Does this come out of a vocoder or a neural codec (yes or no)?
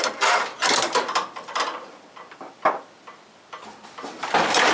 yes